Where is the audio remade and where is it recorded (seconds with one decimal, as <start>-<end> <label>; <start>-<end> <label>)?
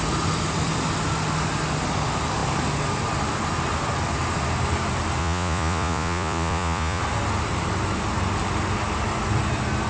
0.0-5.2 recorded; 5.2-7.0 remade; 7.0-9.9 recorded